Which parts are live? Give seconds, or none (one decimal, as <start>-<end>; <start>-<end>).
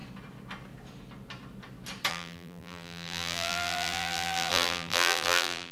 0.0-2.1